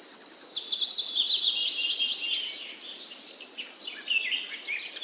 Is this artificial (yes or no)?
no